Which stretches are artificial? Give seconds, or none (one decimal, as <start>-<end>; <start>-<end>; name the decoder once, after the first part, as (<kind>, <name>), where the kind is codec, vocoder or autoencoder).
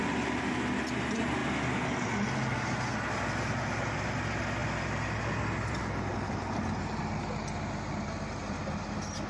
none